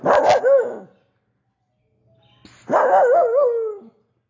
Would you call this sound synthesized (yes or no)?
no